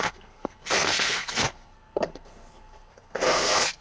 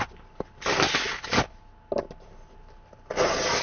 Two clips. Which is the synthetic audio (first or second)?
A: first